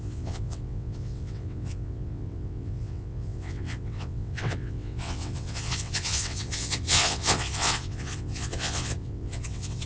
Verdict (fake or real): fake